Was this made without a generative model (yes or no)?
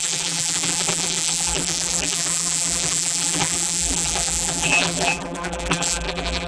no